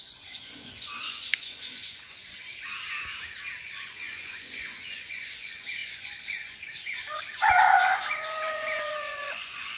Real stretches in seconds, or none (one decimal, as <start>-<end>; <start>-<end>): 2.5-3.6